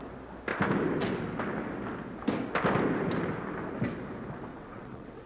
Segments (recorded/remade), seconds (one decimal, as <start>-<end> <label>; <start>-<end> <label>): 0.0-4.5 recorded; 4.5-5.3 remade